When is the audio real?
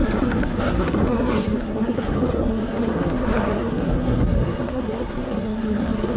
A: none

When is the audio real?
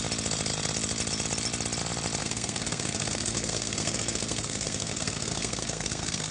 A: 0.0-2.2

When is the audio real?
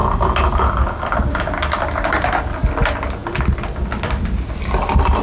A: 0.0-5.2